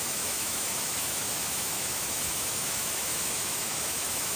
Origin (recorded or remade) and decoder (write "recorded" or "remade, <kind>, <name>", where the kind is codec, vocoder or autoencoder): remade, autoencoder, DAC-VAE